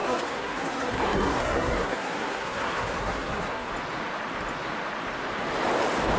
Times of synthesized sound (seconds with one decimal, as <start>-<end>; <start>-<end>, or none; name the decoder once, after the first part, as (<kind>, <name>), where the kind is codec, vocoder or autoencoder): 0.0-3.7 (codec, SNAC)